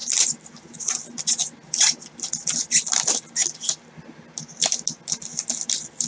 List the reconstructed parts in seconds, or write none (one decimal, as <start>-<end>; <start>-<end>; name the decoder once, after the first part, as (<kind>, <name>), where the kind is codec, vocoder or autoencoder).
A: none